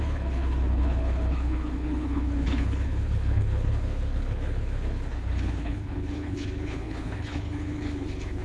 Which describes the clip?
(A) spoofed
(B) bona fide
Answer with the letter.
A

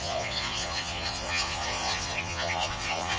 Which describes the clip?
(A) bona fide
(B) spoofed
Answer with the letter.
B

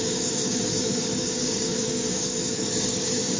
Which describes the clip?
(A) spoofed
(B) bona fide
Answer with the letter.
A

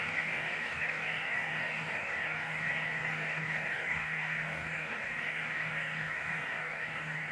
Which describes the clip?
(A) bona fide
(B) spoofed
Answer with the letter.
B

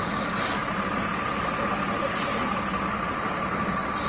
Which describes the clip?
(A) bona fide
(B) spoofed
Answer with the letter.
A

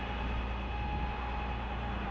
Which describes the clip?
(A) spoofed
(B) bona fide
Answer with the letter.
B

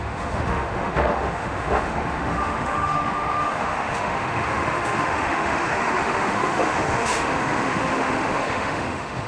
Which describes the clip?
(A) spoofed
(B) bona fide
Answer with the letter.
A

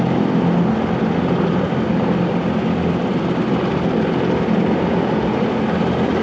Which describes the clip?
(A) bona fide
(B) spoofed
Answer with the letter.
A